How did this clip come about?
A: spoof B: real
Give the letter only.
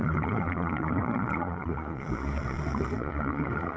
A